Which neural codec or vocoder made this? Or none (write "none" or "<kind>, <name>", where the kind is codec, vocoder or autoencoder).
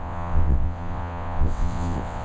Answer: vocoder, WaveNeXt